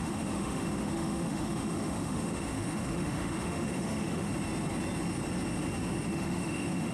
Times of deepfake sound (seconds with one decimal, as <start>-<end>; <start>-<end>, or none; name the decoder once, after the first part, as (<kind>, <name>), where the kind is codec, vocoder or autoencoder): 0.0-4.3 (autoencoder, DAC-VAE); 6.1-6.9